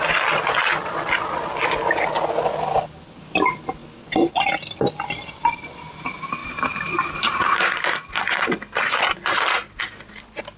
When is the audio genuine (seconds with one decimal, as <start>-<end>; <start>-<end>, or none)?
0.0-6.4; 7.7-10.6